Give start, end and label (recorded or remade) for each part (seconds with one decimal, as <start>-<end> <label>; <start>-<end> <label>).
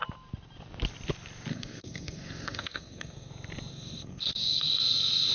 0.0-1.5 recorded; 1.5-3.3 remade; 3.3-3.7 recorded; 3.7-5.3 remade